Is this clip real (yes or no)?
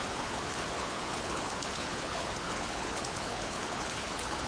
no